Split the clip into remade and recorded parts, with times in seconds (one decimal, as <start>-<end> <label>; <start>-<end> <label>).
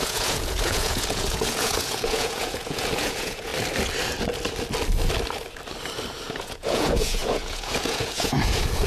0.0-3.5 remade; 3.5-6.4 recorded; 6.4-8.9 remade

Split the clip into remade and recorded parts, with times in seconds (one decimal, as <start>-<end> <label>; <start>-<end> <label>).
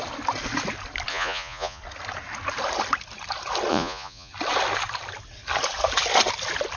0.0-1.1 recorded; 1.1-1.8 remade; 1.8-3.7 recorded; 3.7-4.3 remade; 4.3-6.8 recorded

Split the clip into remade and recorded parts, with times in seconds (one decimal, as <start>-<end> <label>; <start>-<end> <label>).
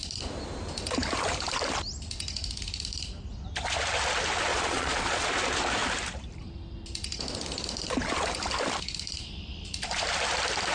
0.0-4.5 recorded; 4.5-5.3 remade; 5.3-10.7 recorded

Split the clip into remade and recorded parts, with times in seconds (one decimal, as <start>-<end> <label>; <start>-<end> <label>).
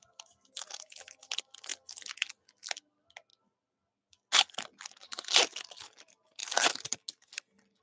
0.0-7.8 recorded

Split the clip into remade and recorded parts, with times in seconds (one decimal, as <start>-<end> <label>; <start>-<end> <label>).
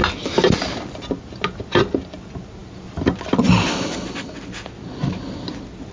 0.0-5.9 recorded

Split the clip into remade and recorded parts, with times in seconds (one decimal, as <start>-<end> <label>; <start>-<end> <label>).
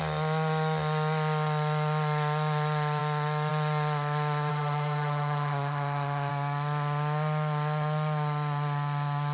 0.0-4.5 recorded; 4.5-6.3 remade; 6.3-9.3 recorded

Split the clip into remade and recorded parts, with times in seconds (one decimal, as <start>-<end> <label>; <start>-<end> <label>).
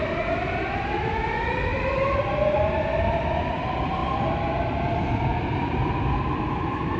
0.0-1.7 recorded; 1.7-2.2 remade; 2.2-7.0 recorded